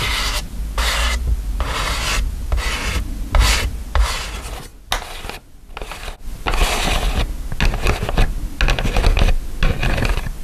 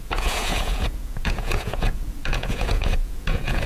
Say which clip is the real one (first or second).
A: first